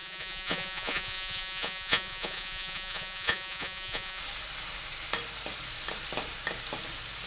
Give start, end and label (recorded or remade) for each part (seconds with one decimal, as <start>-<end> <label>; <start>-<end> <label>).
0.0-4.2 remade; 4.2-7.3 recorded